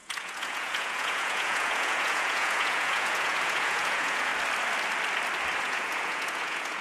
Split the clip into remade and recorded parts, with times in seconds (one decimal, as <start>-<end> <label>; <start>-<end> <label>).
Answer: 0.0-4.3 remade; 4.3-5.6 recorded; 5.6-6.8 remade